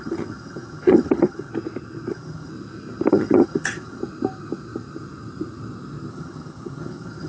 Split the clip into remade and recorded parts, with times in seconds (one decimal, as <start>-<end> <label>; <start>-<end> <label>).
0.0-1.5 remade; 1.5-2.1 recorded; 2.1-2.5 remade; 2.5-3.1 recorded; 3.1-4.0 remade; 4.0-6.1 recorded; 6.1-7.3 remade